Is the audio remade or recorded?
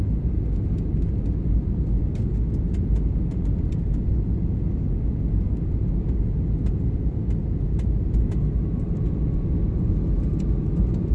recorded